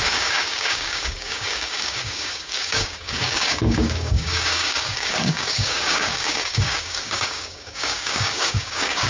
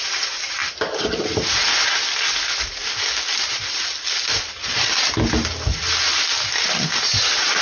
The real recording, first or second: second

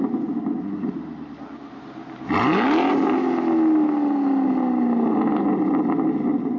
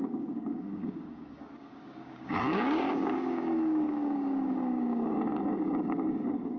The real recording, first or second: first